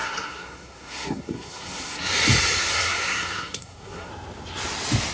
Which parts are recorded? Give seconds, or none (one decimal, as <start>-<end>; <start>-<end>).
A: 2.1-2.6; 4.1-5.1